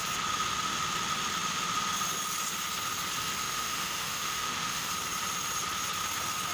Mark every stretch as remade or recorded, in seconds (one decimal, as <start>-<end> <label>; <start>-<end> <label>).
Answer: 0.0-3.4 recorded; 3.4-4.9 remade; 4.9-6.5 recorded